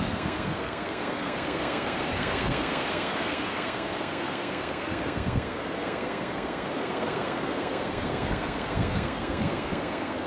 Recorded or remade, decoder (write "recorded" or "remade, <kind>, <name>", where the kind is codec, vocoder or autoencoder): remade, codec, SNAC